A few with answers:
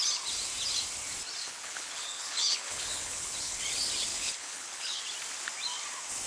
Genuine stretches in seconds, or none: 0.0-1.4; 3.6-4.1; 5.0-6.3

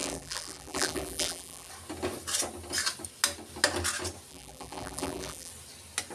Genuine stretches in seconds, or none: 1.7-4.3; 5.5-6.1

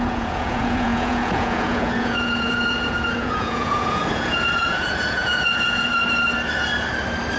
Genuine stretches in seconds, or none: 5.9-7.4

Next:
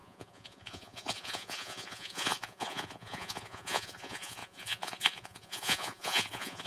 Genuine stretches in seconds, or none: none

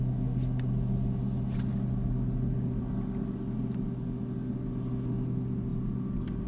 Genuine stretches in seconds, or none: 0.0-6.5